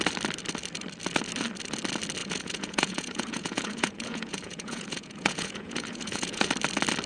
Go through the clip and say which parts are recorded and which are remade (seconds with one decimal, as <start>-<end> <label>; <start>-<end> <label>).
0.0-2.2 recorded; 2.2-6.5 remade; 6.5-7.1 recorded